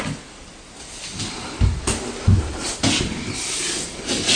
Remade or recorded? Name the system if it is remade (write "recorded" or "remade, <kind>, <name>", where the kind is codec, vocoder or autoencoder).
recorded